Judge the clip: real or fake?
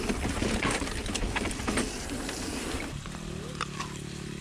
real